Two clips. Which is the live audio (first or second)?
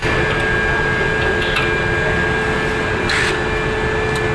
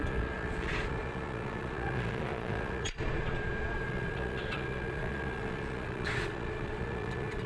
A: first